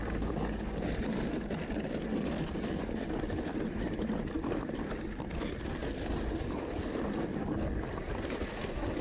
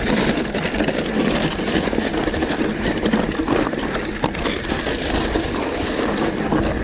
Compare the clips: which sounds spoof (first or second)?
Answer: first